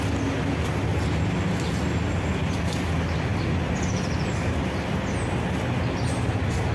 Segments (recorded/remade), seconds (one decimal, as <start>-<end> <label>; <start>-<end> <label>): 0.0-6.7 recorded